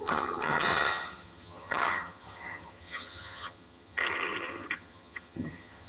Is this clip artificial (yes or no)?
yes